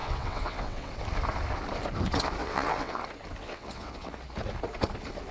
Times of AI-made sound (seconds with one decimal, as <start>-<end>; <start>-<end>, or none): 0.0-0.9; 2.4-3.0; 3.4-4.1